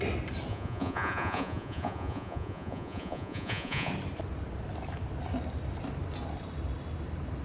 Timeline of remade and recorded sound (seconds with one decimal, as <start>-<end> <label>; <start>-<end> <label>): 0.0-0.5 recorded; 0.5-3.9 remade; 3.9-7.4 recorded